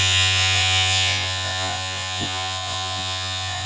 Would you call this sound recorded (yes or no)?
no